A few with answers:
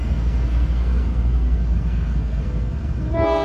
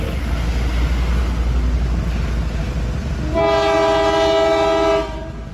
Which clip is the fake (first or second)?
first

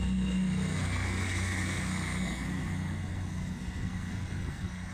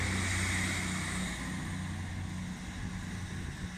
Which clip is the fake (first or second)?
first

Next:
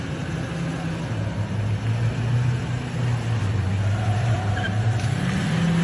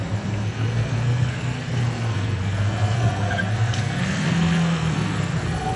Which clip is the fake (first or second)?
second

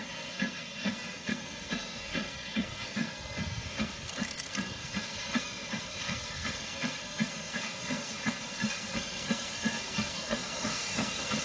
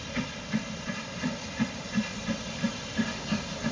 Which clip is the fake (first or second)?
first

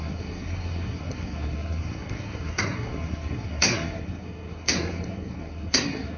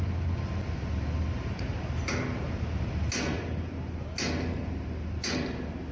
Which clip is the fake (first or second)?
first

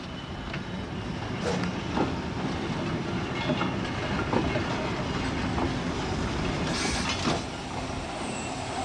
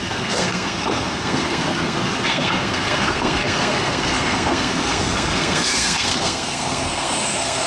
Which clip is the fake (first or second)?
second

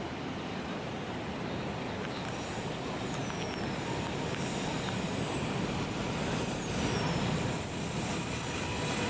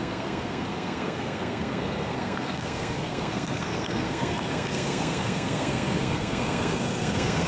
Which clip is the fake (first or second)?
second